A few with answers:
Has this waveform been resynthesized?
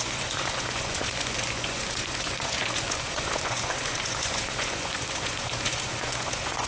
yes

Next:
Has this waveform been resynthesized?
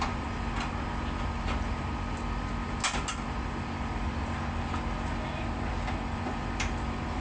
no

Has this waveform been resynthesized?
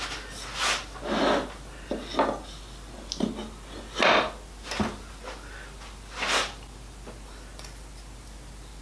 no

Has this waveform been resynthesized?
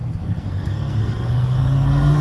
yes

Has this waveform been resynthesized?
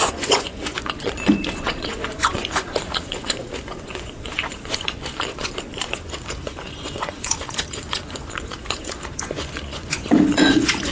yes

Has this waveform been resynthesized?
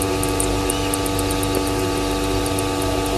no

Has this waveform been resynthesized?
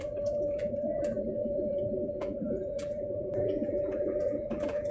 yes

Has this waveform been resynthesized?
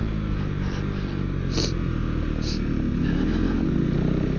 no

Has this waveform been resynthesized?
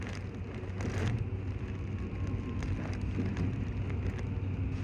no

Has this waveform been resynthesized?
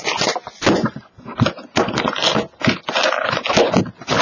no